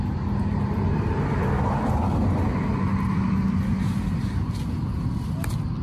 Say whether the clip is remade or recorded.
recorded